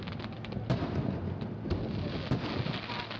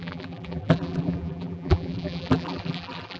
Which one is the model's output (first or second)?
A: second